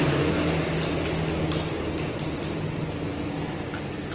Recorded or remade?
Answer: recorded